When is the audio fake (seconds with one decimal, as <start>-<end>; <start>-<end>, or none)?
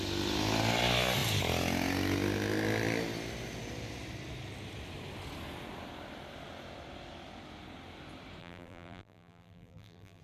8.4-10.2